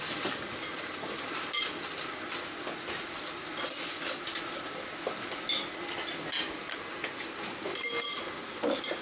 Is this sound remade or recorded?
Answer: recorded